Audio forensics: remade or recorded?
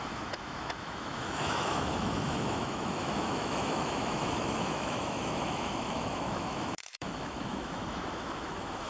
remade